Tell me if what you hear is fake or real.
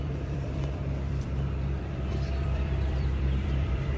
fake